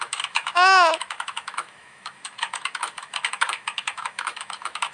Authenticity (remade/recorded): remade